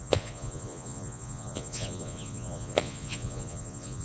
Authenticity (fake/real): fake